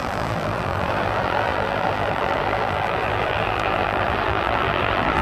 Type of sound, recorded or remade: remade